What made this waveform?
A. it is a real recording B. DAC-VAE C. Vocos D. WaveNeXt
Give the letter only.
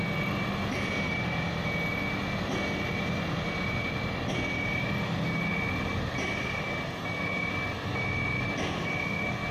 A